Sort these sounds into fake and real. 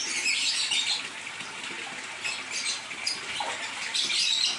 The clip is real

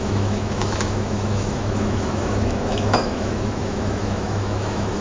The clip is fake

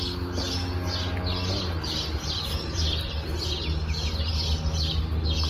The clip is real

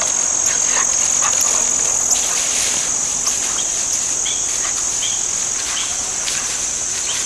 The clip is real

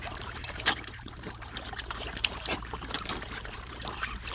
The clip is fake